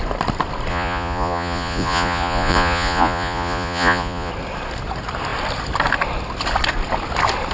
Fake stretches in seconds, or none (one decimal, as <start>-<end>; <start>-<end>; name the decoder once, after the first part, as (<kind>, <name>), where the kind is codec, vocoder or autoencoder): 0.7-4.3 (vocoder, Vocos)